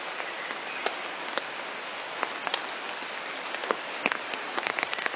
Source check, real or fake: real